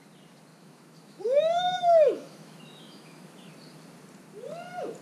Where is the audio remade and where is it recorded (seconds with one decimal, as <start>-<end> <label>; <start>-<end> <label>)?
0.0-0.5 recorded; 0.5-3.5 remade; 3.5-5.0 recorded

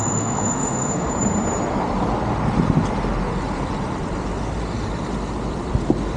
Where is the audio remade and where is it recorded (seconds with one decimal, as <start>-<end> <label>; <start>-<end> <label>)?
0.0-1.1 remade; 1.1-6.2 recorded

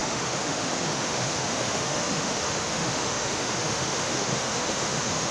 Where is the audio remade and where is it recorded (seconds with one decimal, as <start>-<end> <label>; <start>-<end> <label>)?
0.0-5.3 remade

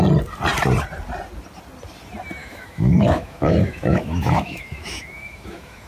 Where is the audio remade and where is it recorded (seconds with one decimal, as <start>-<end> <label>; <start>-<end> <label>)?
0.0-2.4 recorded; 2.4-5.9 remade